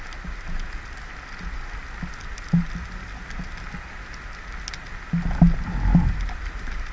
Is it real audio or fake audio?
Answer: real